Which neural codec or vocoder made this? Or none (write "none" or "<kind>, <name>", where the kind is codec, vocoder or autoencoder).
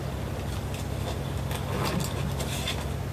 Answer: none